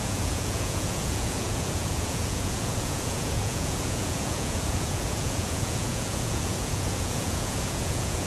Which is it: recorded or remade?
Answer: remade